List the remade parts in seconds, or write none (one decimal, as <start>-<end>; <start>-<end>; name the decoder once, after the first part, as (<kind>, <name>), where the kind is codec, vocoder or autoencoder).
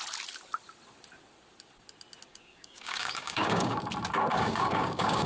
2.3-3.9 (codec, DAC); 4.3-5.3